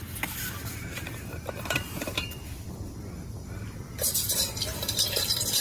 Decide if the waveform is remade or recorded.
remade